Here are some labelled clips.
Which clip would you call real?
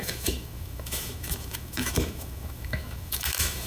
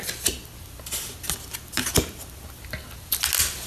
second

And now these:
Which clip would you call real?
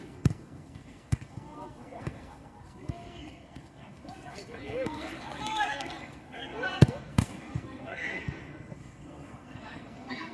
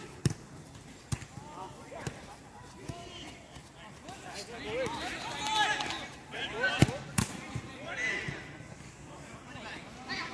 second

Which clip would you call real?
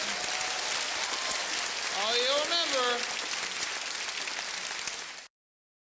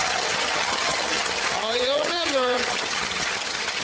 first